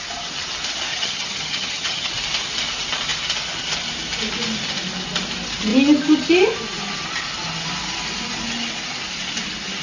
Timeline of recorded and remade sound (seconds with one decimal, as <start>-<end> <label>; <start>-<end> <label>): 0.0-0.9 recorded; 0.9-2.1 remade; 2.1-9.8 recorded